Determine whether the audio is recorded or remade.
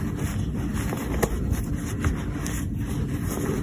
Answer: recorded